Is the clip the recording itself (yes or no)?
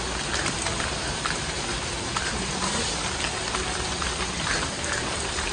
yes